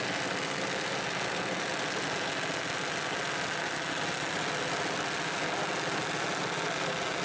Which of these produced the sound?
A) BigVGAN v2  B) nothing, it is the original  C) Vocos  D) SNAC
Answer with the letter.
B